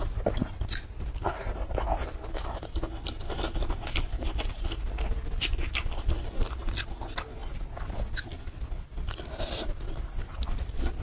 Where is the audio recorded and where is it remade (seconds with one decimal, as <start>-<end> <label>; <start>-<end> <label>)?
0.0-11.0 recorded